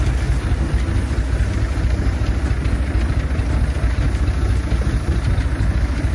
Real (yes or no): yes